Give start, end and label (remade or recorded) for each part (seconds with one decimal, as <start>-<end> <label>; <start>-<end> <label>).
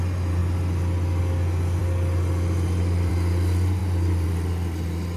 0.0-5.2 recorded